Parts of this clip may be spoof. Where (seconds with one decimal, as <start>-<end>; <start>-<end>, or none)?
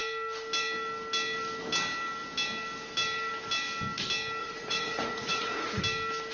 4.4-5.8